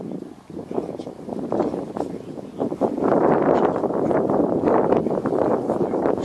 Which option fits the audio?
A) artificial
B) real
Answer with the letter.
B